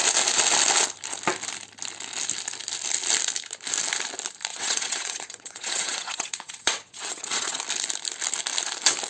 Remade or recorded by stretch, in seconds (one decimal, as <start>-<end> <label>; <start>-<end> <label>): 0.0-4.5 recorded; 4.5-7.6 remade; 7.6-9.1 recorded